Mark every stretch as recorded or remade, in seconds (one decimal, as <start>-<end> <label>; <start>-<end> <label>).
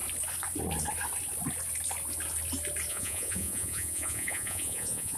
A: 0.0-2.9 recorded; 2.9-5.2 remade